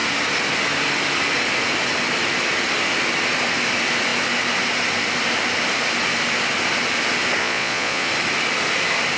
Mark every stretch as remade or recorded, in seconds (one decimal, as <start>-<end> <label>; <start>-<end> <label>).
0.0-7.4 recorded; 7.4-8.1 remade; 8.1-9.2 recorded